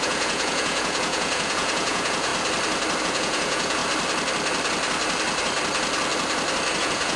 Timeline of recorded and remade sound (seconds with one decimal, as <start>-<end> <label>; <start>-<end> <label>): 0.0-2.3 remade; 2.3-3.0 recorded; 3.0-3.8 remade; 3.8-6.8 recorded; 6.8-7.2 remade